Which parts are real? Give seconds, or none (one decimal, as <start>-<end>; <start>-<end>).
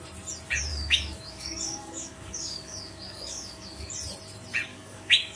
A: 0.0-0.7; 3.9-4.7